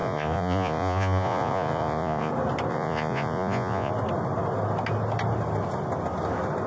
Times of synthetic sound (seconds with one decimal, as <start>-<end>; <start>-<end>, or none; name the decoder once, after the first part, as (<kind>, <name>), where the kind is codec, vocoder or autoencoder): 0.0-2.3 (vocoder, Vocos); 2.7-3.9